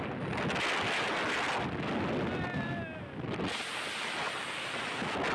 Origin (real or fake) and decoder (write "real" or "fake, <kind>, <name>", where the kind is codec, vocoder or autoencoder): real